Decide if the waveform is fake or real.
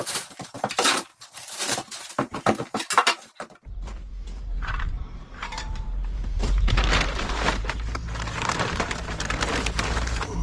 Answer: fake